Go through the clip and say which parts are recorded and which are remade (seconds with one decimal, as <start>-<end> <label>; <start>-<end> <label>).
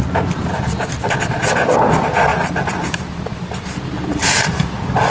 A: 0.0-2.3 recorded; 2.3-3.1 remade; 3.1-4.2 recorded; 4.2-5.1 remade